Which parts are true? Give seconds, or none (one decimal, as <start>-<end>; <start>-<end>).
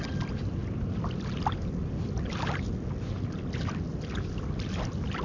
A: 0.0-5.2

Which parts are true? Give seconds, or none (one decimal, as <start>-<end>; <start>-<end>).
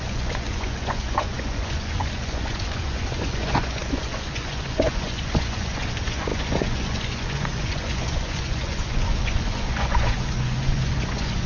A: none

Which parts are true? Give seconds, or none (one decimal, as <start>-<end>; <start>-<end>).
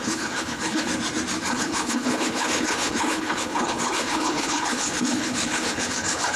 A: 0.9-1.5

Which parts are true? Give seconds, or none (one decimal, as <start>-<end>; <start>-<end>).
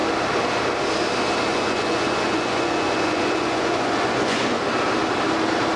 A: 0.0-1.5; 4.6-5.8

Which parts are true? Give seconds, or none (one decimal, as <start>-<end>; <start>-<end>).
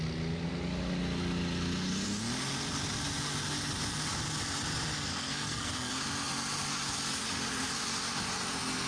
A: 0.0-5.1; 5.9-8.9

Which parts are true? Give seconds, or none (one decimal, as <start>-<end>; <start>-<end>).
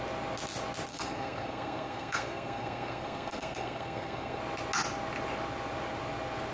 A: 0.0-0.9; 4.4-6.5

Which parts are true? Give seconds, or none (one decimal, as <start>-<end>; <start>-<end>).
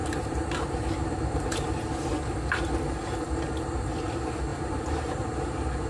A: 2.6-4.5; 5.5-5.9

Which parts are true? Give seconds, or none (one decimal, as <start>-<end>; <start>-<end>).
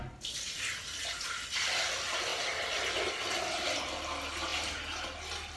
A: 0.0-5.6